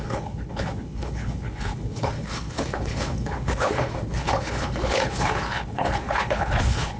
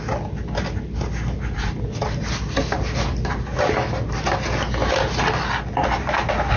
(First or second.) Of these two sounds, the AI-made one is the first